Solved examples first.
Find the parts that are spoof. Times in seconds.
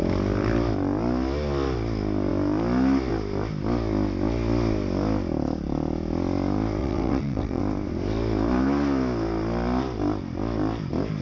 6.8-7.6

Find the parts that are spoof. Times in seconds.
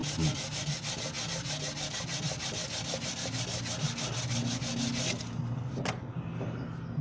none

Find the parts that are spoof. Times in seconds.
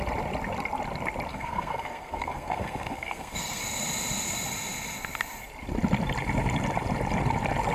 1.3-3.6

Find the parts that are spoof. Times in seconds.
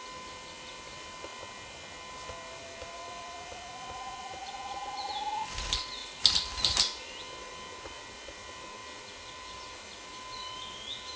none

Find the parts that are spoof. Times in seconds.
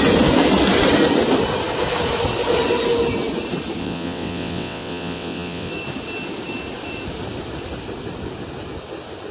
3.8-5.7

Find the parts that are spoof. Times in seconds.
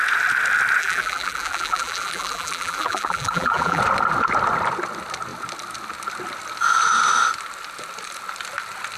0.8-3.8